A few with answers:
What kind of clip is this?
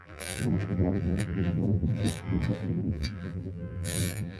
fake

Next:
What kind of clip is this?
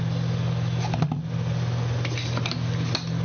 real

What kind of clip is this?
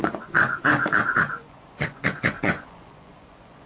fake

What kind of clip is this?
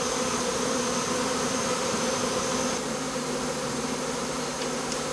real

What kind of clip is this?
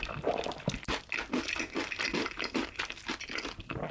real